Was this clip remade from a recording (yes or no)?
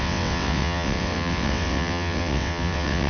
yes